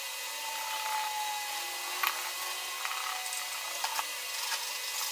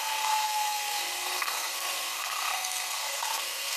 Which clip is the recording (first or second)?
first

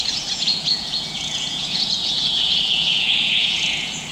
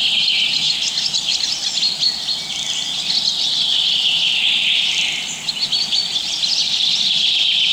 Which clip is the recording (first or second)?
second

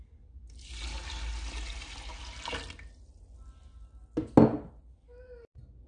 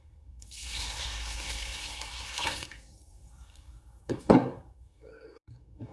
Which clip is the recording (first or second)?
first